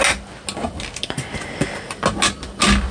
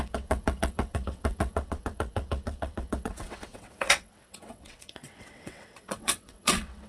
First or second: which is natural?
first